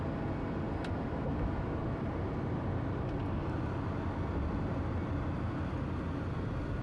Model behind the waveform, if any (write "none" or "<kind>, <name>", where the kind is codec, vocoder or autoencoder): none